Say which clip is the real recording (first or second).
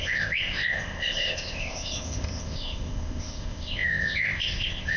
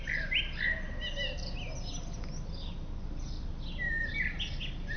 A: second